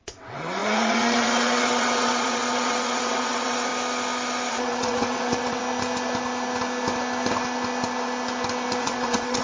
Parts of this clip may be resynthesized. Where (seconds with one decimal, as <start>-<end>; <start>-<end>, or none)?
0.0-3.7; 4.5-5.6; 8.8-9.4